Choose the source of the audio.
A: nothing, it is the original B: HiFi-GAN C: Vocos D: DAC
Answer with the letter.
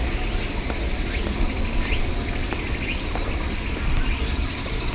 A